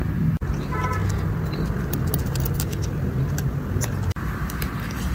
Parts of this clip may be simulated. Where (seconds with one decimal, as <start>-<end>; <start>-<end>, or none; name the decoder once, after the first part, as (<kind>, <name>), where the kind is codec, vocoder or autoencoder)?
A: none

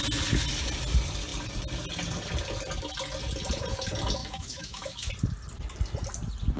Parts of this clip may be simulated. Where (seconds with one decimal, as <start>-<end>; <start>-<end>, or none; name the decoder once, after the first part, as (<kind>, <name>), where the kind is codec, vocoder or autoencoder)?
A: 4.2-5.1 (autoencoder, DAC-VAE)

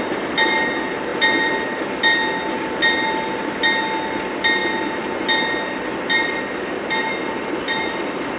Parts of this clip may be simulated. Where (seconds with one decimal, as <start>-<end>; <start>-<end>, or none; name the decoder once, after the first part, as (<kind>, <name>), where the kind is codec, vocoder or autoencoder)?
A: none

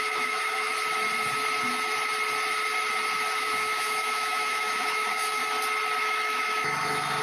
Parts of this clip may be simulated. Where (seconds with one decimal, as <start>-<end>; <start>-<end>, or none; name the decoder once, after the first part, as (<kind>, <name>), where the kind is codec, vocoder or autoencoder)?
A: 0.0-0.7 (autoencoder, DAC-VAE); 3.4-5.4; 6.0-7.2

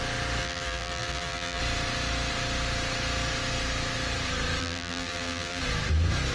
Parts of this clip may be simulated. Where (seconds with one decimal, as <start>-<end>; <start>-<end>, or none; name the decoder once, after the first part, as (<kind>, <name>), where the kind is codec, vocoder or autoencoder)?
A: 0.4-1.6 (vocoder, BigVGAN v2); 4.6-5.6

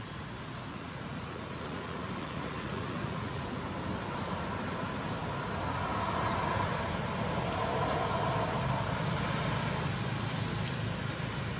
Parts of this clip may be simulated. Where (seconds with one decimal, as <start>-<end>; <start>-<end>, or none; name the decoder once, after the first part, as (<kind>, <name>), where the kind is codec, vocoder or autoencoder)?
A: 0.7-3.4 (vocoder, Vocos)

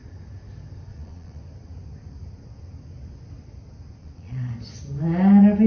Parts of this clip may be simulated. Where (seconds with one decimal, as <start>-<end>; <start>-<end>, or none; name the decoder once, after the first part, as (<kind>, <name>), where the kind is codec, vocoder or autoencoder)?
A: 0.9-1.4 (vocoder, Vocos); 4.0-4.5

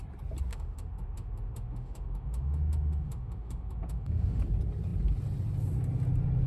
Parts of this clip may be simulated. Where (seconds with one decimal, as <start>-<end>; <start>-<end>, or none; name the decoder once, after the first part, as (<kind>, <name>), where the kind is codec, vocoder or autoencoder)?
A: 0.5-4.4 (autoencoder, DAC-VAE)